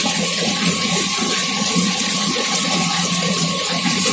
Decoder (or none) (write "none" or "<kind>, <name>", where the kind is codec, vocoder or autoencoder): vocoder, Vocos